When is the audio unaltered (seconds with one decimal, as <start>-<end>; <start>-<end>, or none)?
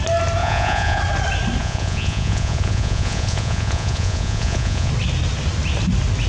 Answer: 0.0-0.4; 1.0-1.6; 4.9-6.3